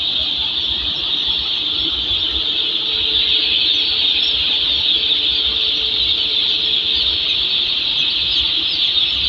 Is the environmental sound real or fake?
real